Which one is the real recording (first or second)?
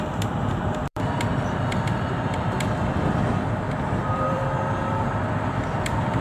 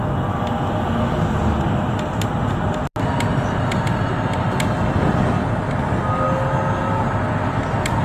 second